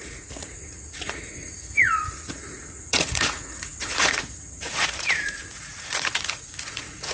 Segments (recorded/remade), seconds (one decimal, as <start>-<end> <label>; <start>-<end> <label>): 0.0-7.1 remade

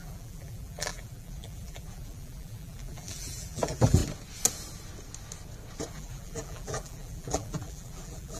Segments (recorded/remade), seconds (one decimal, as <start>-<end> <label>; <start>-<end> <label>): 0.0-4.0 remade; 4.0-5.9 recorded; 5.9-8.4 remade

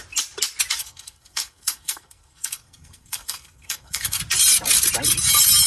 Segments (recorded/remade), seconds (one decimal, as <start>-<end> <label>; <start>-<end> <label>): 0.0-0.8 recorded; 0.8-4.2 remade; 4.2-5.7 recorded

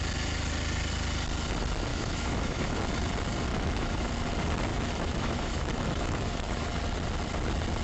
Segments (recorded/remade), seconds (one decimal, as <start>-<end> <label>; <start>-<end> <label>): 0.0-1.9 recorded; 1.9-2.7 remade; 2.7-3.5 recorded; 3.5-4.1 remade; 4.1-4.7 recorded; 4.7-6.7 remade; 6.7-7.8 recorded